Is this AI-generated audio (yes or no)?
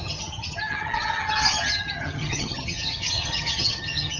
yes